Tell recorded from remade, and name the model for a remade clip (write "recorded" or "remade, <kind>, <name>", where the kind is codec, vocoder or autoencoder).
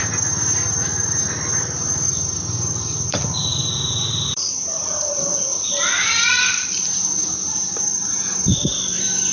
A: remade, vocoder, BigVGAN v2